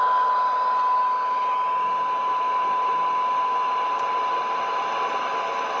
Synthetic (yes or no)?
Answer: no